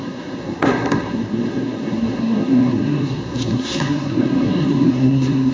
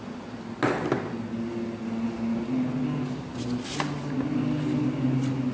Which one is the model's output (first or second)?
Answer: first